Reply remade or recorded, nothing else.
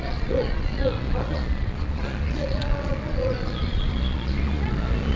remade